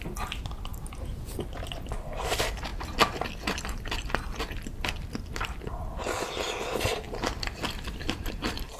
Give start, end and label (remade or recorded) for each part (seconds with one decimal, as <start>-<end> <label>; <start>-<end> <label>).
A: 0.0-0.7 remade; 0.7-1.7 recorded; 1.7-8.8 remade

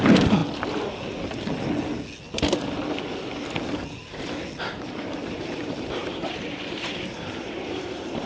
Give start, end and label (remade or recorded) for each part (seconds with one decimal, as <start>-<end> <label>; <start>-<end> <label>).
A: 0.0-0.4 remade; 0.4-4.6 recorded; 4.6-8.3 remade

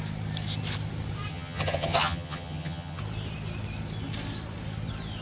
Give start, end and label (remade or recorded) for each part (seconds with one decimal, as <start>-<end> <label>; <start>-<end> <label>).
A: 0.0-1.3 recorded; 1.3-3.0 remade; 3.0-5.2 recorded

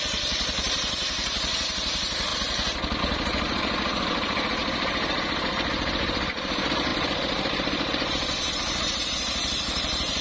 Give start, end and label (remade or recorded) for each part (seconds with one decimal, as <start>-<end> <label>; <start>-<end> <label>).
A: 0.0-2.3 remade; 2.3-3.0 recorded; 3.0-10.2 remade

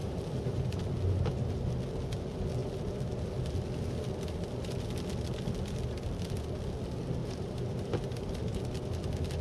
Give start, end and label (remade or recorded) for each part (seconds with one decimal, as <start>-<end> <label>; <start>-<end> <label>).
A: 0.0-0.8 remade; 0.8-7.2 recorded; 7.2-8.6 remade; 8.6-9.4 recorded

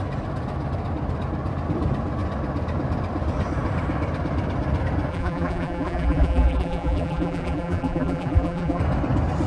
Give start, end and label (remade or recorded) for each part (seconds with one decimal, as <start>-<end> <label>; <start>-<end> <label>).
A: 0.0-5.1 recorded; 5.1-8.8 remade; 8.8-9.5 recorded

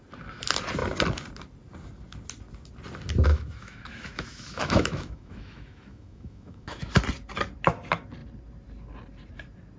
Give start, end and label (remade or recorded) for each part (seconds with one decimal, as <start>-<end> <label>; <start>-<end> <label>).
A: 0.0-3.3 recorded; 3.3-6.9 remade; 6.9-9.8 recorded